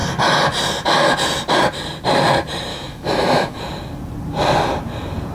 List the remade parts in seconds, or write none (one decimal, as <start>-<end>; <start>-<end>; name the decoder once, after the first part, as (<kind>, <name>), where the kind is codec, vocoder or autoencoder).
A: 2.7-3.6 (autoencoder, DAC-VAE)